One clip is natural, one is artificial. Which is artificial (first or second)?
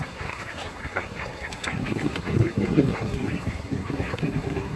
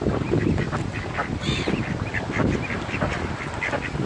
first